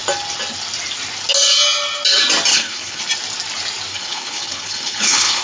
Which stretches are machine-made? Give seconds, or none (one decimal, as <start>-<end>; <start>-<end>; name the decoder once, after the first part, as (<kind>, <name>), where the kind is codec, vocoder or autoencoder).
2.5-3.0 (codec, HILCodec); 3.9-5.4